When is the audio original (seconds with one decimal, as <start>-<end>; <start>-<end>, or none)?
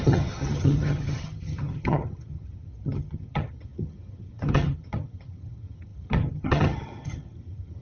none